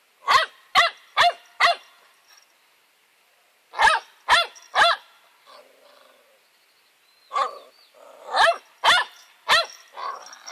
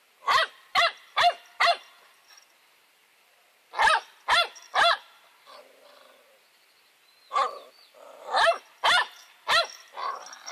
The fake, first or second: second